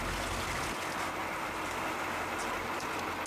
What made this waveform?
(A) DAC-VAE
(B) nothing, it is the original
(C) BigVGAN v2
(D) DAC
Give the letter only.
B